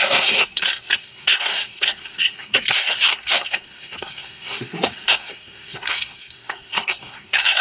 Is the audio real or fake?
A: fake